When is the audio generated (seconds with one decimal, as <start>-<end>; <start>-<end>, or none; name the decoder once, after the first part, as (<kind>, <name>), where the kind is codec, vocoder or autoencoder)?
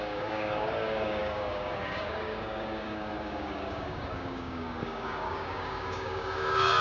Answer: 0.0-6.8 (codec, DAC)